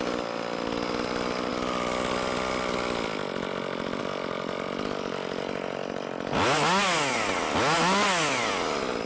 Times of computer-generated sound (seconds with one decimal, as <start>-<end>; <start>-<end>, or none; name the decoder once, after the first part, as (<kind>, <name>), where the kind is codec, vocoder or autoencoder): none